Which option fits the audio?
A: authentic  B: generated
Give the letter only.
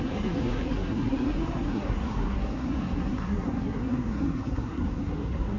B